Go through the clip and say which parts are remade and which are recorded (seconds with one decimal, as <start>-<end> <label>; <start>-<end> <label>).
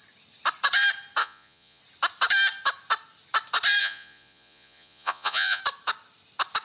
0.0-1.2 recorded; 1.2-1.8 remade; 1.8-3.8 recorded; 3.8-5.6 remade; 5.6-6.6 recorded